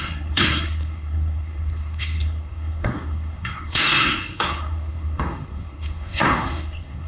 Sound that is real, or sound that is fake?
fake